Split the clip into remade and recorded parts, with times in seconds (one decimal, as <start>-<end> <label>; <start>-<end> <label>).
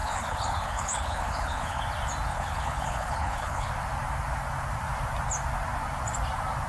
0.0-1.8 remade; 1.8-2.3 recorded; 2.3-3.7 remade; 3.7-6.7 recorded